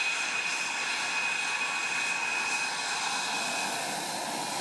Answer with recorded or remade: recorded